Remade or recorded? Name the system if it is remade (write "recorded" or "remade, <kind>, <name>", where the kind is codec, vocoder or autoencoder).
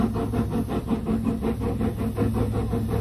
recorded